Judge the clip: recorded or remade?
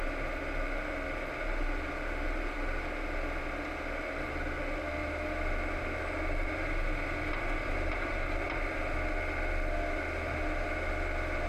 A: recorded